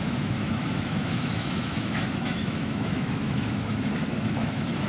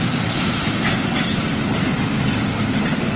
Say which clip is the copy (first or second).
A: first